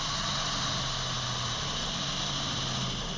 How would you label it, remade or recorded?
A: recorded